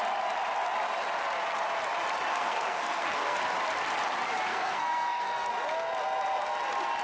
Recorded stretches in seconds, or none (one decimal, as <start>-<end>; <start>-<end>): 0.0-2.3; 3.4-4.5; 5.5-7.0